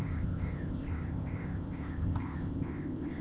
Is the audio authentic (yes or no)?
no